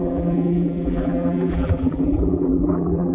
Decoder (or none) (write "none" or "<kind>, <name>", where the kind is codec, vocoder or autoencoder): vocoder, BigVGAN v2